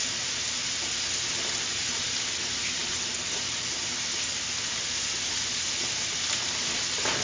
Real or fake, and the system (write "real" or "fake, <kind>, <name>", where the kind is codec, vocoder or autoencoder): real